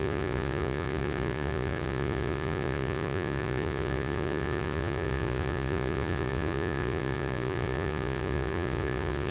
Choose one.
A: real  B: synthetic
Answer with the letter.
B